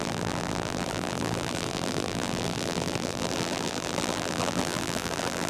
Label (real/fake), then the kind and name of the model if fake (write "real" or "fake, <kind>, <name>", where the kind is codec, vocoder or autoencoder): fake, vocoder, BigVGAN v2